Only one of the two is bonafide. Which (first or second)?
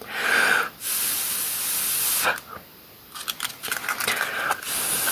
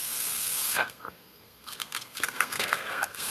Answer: first